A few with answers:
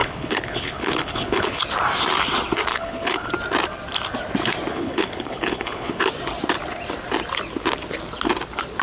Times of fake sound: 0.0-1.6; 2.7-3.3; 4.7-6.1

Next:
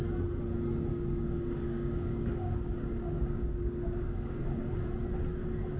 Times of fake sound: 0.9-4.4

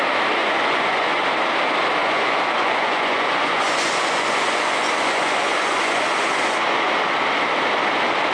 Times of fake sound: 0.4-1.3; 2.0-6.9

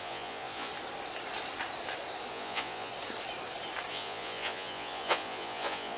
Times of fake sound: 0.0-0.7; 2.3-2.9; 3.9-6.0

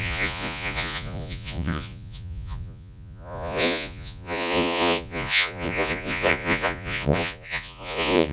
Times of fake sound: 0.0-8.3

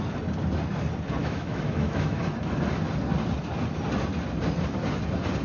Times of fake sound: 1.2-2.2